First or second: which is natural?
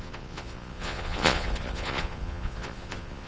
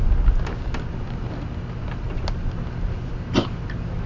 second